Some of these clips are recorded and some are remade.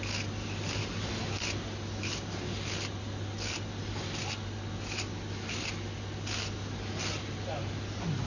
recorded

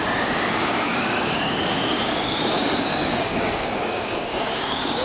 remade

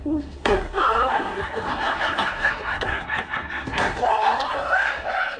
remade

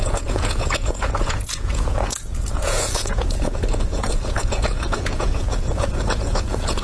remade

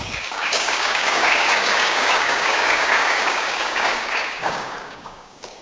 remade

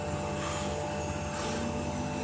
recorded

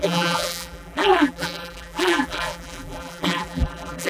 remade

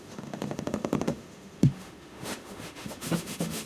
remade